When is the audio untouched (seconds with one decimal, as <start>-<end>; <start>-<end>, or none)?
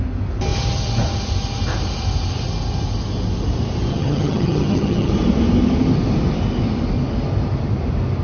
0.0-3.9; 5.1-8.2